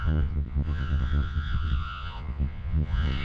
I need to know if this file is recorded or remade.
remade